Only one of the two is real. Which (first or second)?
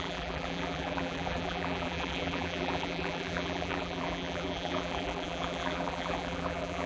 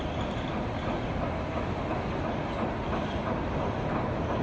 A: second